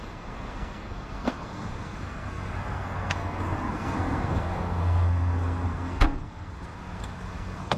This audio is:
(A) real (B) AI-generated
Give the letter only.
B